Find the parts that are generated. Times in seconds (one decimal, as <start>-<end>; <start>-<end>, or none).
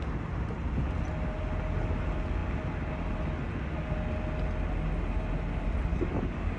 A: 5.9-6.6